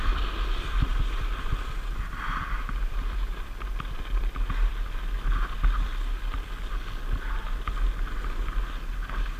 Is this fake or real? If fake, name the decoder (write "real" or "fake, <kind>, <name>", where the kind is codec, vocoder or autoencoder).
real